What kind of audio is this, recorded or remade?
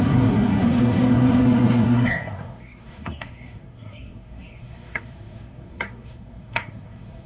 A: remade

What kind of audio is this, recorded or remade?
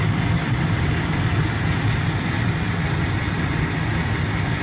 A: recorded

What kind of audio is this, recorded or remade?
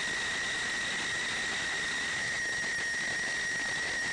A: recorded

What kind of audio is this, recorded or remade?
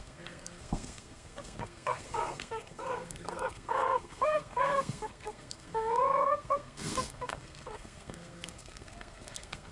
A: remade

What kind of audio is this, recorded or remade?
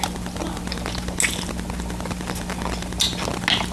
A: recorded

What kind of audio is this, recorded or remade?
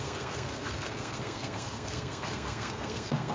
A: remade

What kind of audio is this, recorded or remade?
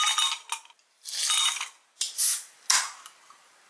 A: recorded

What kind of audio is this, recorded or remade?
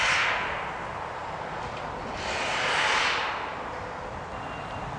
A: recorded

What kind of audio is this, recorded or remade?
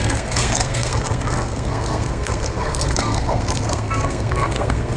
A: remade